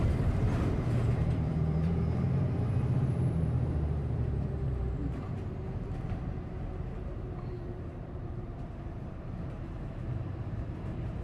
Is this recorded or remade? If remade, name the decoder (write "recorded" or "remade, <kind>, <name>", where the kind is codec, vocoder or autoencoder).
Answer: remade, vocoder, BigVGAN v2